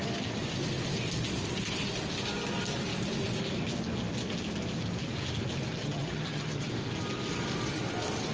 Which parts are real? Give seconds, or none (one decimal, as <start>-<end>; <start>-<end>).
0.0-5.8; 6.7-8.3

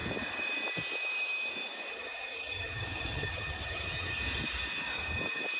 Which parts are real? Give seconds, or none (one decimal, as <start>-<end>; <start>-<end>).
0.0-1.9; 4.2-5.6

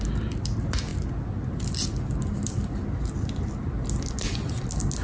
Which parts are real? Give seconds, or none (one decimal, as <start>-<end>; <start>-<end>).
0.0-5.0